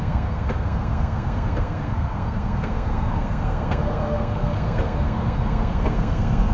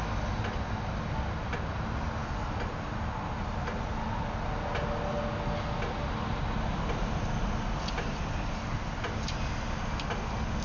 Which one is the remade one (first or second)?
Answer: first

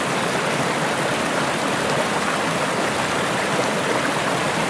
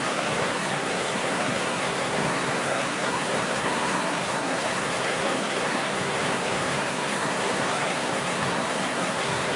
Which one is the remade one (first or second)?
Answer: second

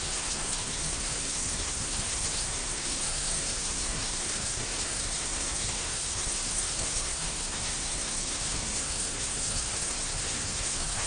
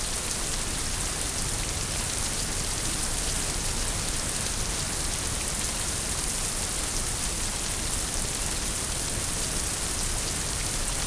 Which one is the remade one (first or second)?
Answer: first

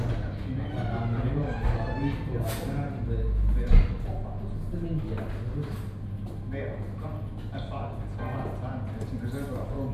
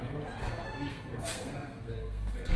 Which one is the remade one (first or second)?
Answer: second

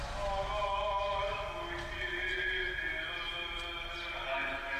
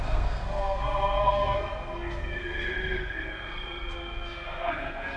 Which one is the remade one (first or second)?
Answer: second